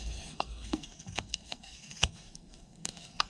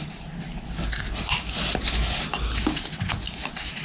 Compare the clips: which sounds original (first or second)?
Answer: second